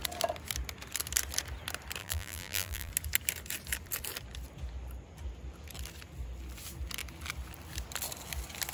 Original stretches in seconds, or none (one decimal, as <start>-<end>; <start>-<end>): 0.0-2.0; 2.9-8.7